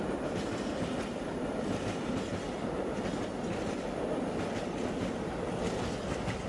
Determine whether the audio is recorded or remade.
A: recorded